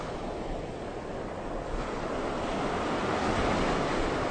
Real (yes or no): yes